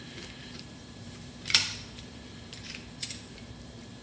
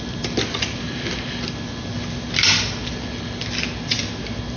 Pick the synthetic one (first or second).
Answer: first